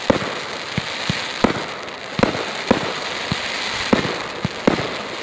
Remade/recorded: recorded